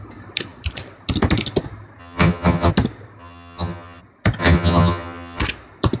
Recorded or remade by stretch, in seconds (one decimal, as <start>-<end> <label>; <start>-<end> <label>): 0.0-2.0 recorded; 2.0-2.7 remade; 2.7-3.2 recorded; 3.2-4.0 remade; 4.0-4.4 recorded; 4.4-5.4 remade; 5.4-6.0 recorded